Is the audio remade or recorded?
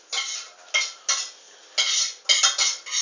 recorded